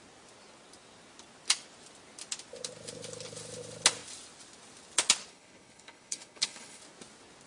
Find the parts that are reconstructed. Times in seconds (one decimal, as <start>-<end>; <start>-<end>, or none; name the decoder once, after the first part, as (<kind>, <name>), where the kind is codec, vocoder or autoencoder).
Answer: 5.3-6.8 (codec, HILCodec)